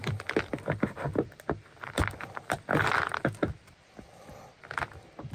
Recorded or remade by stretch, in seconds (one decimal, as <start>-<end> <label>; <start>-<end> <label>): 0.0-1.1 recorded; 1.1-4.2 remade; 4.2-5.3 recorded